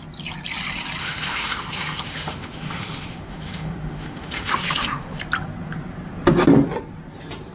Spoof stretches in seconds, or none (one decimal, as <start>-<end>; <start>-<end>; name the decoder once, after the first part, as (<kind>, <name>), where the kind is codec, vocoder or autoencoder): 1.0-5.2 (autoencoder, DAC-VAE)